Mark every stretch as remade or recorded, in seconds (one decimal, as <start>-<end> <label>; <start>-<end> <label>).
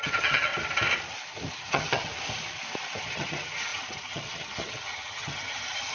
0.0-0.5 remade; 0.5-1.5 recorded; 1.5-2.1 remade; 2.1-3.0 recorded; 3.0-5.9 remade